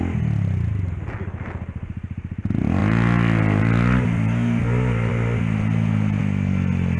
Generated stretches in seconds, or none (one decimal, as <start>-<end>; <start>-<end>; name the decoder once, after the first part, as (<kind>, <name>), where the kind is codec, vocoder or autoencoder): none